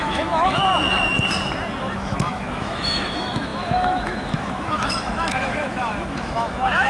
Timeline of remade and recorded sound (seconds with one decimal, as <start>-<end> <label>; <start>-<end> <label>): 0.0-0.6 remade; 0.6-1.8 recorded; 1.8-6.9 remade

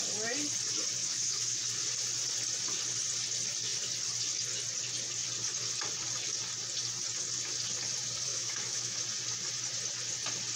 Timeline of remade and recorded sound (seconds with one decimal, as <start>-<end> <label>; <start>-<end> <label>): 0.0-1.0 recorded; 1.0-1.6 remade; 1.6-8.3 recorded; 8.3-9.0 remade; 9.0-10.6 recorded

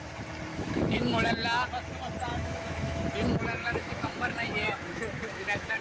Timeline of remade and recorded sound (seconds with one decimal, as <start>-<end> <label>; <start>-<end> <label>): 0.0-0.5 recorded; 0.5-1.3 remade; 1.3-2.3 recorded; 2.3-3.0 remade; 3.0-3.6 recorded; 3.6-5.8 remade

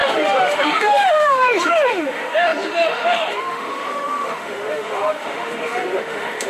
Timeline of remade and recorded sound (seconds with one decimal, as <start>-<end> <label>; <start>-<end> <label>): 0.0-6.5 remade

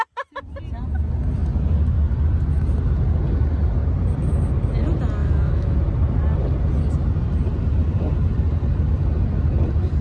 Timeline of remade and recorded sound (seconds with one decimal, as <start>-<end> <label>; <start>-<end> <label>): 0.0-5.2 recorded; 5.2-5.7 remade; 5.7-10.0 recorded

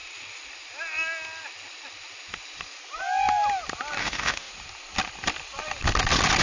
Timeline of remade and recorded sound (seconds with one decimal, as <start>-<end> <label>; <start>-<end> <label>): 0.0-4.0 recorded; 4.0-4.5 remade; 4.5-6.4 recorded